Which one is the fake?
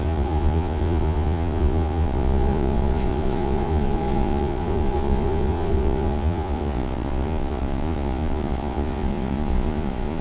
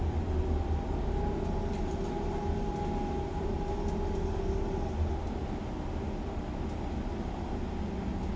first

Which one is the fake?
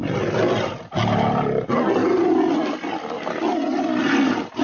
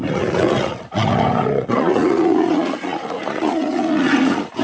second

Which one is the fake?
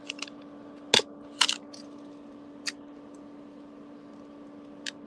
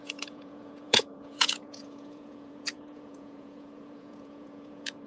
second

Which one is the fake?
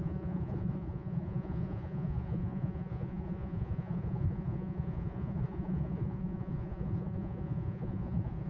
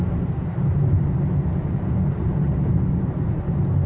first